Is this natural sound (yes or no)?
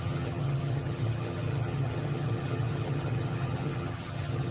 no